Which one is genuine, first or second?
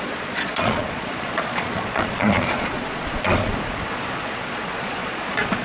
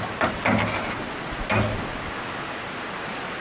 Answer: second